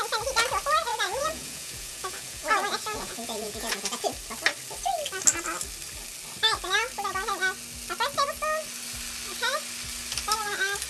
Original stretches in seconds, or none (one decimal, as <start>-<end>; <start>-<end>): 0.0-0.9; 4.0-10.9